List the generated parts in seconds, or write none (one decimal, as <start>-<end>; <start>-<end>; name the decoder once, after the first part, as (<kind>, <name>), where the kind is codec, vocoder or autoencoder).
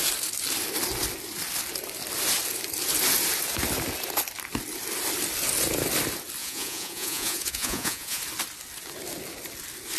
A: 6.4-8.2 (vocoder, Vocos)